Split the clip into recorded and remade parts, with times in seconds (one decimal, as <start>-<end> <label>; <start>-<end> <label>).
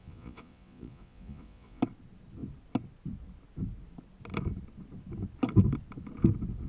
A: 0.0-1.8 remade; 1.8-6.7 recorded